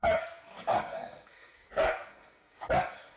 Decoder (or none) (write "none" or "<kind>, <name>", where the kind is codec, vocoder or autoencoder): codec, SNAC